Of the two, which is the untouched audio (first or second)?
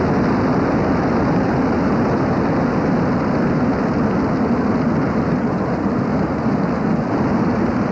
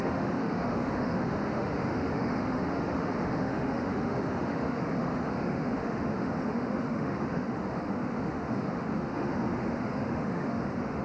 first